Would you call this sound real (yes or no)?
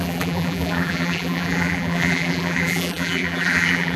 no